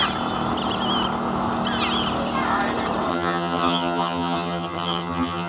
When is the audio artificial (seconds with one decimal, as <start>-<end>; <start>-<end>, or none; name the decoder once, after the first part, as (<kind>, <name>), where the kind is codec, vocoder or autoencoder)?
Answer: 3.1-5.5 (vocoder, HiFi-GAN)